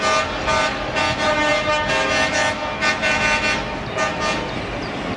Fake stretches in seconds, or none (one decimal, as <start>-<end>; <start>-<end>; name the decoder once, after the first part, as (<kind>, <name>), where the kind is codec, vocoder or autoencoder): none